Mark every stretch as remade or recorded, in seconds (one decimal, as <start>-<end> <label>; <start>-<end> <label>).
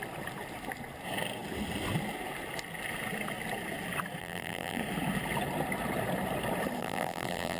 0.0-4.2 recorded; 4.2-4.8 remade; 4.8-6.8 recorded; 6.8-7.6 remade